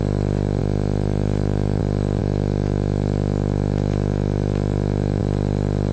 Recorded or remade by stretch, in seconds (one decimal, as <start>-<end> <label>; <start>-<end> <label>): 0.0-0.6 recorded; 0.6-1.8 remade; 1.8-2.2 recorded; 2.2-5.2 remade; 5.2-5.9 recorded